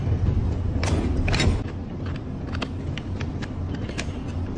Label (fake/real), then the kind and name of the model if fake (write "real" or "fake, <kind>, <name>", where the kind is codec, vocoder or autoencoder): real